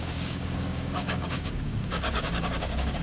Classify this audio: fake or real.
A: fake